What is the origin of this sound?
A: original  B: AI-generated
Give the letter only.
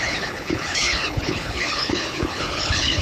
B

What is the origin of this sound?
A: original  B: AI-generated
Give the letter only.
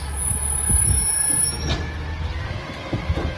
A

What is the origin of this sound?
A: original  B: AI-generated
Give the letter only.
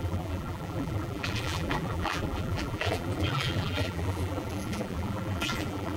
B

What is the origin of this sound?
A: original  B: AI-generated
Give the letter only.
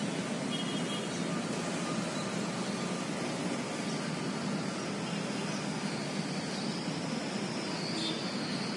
A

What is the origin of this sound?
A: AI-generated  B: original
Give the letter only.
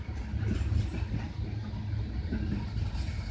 B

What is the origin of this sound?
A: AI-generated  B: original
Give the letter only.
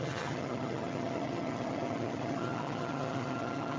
A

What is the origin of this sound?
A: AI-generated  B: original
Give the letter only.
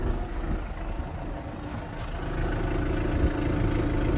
B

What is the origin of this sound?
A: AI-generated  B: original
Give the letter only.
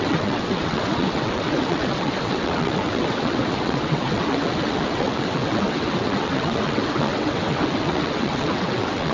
A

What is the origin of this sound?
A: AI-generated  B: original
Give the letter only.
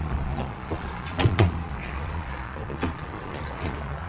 A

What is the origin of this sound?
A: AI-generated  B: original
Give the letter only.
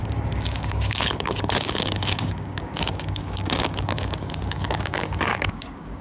A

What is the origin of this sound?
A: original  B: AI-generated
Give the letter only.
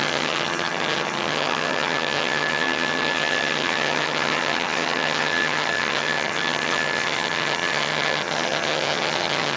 B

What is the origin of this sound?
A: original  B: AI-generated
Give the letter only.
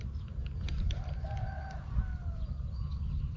A